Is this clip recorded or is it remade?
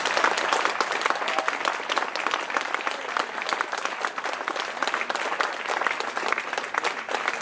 recorded